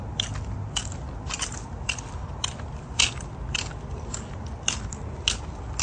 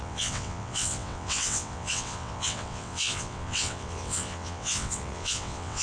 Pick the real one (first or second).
first